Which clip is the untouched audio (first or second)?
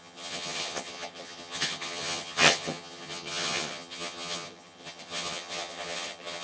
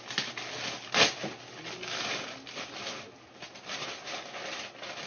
second